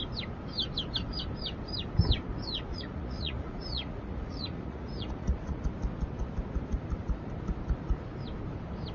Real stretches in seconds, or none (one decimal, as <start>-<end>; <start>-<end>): 0.0-2.7; 5.6-8.9